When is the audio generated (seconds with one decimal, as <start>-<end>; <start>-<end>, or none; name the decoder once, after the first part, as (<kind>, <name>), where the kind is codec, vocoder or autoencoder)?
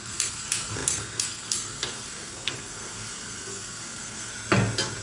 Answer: 0.0-4.3 (codec, SNAC)